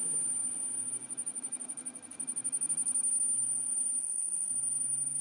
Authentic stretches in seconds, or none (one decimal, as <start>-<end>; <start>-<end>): 0.0-4.0; 4.5-5.2